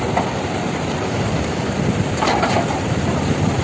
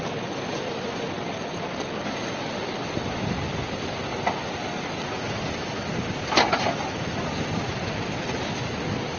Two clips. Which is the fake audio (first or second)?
first